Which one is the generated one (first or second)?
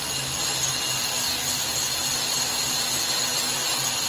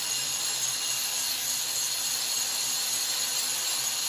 second